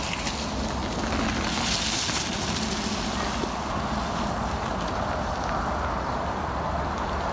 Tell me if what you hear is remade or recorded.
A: recorded